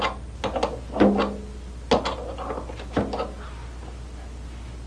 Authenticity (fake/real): real